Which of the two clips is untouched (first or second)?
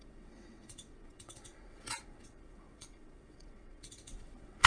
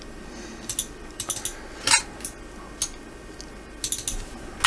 second